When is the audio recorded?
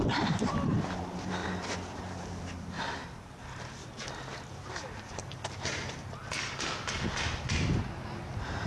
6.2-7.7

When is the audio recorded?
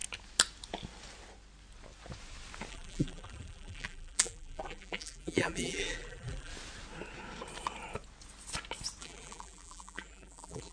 0.0-2.7; 6.5-9.0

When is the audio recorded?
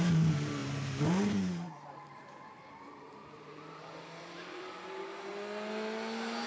5.3-6.5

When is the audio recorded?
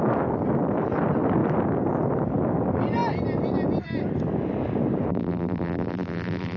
0.0-5.1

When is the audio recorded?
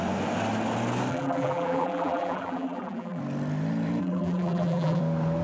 0.0-1.1; 3.2-4.0; 5.0-5.4